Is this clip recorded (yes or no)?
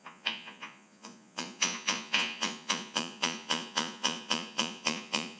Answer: no